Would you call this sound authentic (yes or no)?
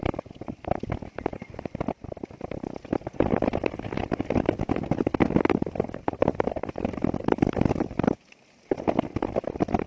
yes